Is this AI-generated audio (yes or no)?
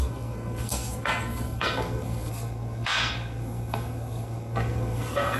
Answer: yes